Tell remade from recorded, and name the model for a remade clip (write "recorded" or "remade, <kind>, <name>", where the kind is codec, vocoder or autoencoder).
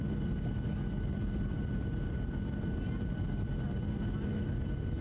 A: recorded